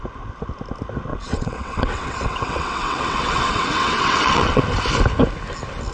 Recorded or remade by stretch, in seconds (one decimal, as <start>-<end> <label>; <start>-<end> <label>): 0.0-1.1 recorded; 1.1-4.6 remade; 4.6-5.9 recorded